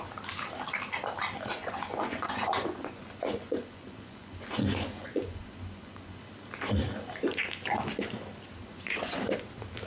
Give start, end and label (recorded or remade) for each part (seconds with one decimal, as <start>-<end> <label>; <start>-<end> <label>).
0.0-1.6 recorded; 1.6-6.2 remade; 6.2-8.6 recorded; 8.6-9.2 remade; 9.2-9.9 recorded